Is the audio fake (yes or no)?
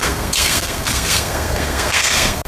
yes